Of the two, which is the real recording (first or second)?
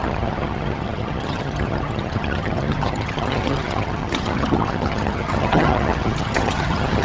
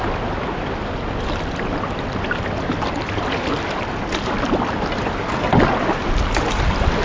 second